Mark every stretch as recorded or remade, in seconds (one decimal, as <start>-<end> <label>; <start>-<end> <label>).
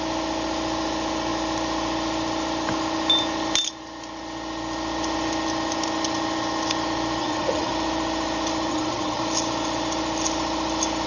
0.0-7.2 recorded; 7.2-7.7 remade; 7.7-8.7 recorded; 8.7-9.2 remade; 9.2-11.1 recorded